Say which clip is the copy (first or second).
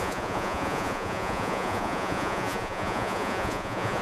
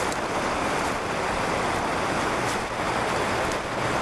first